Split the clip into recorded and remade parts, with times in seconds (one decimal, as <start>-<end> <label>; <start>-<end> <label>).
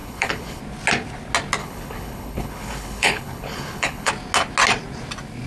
0.0-0.6 remade; 0.6-1.6 recorded; 1.6-4.1 remade; 4.1-5.5 recorded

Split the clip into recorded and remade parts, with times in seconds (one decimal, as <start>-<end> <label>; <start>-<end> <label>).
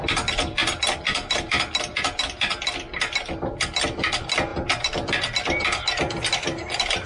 0.0-7.1 recorded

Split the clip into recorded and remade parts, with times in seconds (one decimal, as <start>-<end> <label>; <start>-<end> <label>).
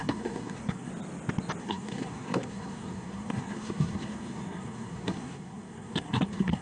0.0-0.9 remade; 0.9-1.6 recorded; 1.6-6.6 remade